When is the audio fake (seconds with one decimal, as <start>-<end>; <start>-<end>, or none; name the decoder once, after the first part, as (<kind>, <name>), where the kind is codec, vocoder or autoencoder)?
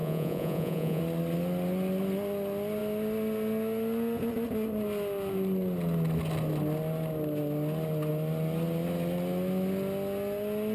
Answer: 0.0-1.0 (vocoder, Vocos)